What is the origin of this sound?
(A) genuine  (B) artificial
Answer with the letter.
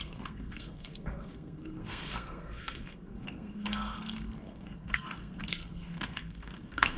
B